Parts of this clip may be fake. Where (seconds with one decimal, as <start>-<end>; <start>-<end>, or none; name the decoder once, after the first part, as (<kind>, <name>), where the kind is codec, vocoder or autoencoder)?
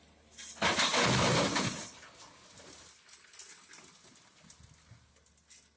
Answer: none